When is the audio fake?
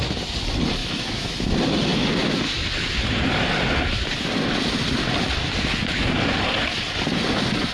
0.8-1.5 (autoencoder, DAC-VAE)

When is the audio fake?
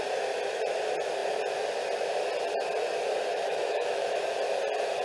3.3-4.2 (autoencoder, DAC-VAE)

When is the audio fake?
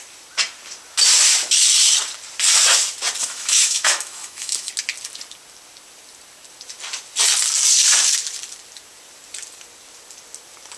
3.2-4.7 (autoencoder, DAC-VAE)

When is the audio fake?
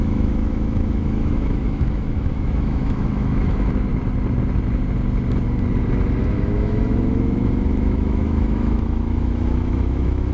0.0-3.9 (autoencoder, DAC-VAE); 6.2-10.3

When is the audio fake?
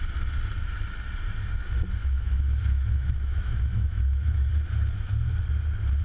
2.0-4.5 (autoencoder, DAC-VAE)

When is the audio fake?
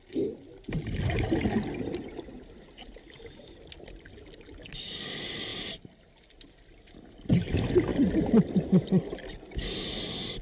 none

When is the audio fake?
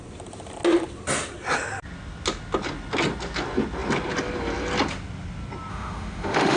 5.7-6.6 (autoencoder, DAC-VAE)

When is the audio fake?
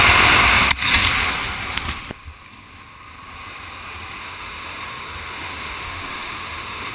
4.2-6.9 (autoencoder, DAC-VAE)